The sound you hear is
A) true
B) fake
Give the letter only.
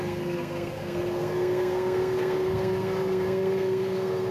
B